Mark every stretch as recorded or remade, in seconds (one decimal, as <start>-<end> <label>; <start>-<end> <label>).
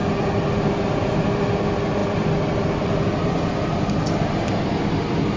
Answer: 0.0-5.4 recorded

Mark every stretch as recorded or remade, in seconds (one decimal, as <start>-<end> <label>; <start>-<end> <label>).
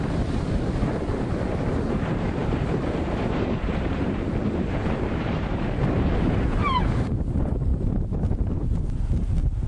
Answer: 0.0-9.7 remade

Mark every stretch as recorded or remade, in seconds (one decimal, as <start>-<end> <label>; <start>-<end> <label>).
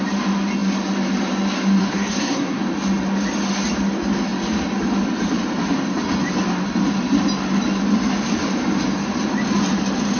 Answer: 0.0-1.8 recorded; 1.8-2.6 remade; 2.6-10.2 recorded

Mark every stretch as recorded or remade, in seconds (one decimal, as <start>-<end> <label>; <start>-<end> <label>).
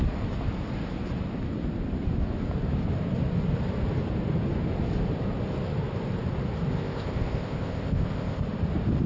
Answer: 0.0-6.7 recorded; 6.7-8.4 remade; 8.4-9.1 recorded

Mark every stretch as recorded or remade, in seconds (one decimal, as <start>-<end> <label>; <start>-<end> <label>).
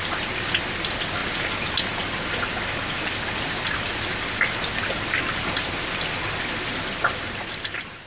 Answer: 0.0-8.1 recorded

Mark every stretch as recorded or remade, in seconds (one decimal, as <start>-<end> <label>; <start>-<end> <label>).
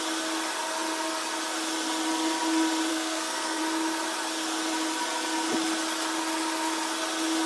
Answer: 0.0-2.9 recorded; 2.9-3.6 remade; 3.6-7.5 recorded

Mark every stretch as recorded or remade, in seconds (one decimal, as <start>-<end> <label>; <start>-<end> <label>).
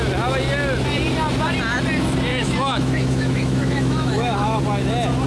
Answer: 0.0-2.3 recorded; 2.3-4.6 remade; 4.6-5.3 recorded